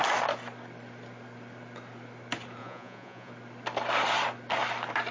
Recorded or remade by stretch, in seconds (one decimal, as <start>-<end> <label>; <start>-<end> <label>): 0.0-2.6 recorded; 2.6-3.3 remade; 3.3-5.1 recorded